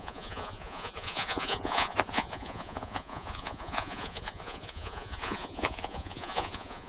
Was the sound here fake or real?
fake